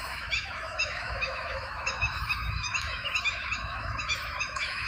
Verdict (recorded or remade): remade